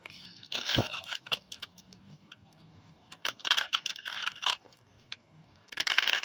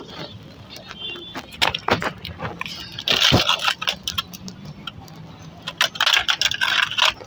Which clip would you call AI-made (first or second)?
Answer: first